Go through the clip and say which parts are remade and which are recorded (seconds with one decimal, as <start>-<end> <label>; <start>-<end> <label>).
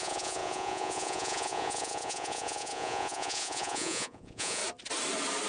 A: 0.0-4.6 remade; 4.6-5.5 recorded